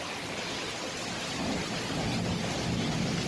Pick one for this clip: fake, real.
real